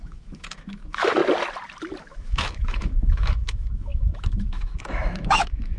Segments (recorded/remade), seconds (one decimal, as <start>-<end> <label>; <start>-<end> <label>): 0.0-1.2 remade; 1.2-2.0 recorded; 2.0-5.8 remade